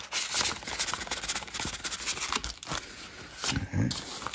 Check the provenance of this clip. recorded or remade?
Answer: recorded